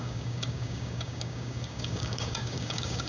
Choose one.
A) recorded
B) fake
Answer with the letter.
B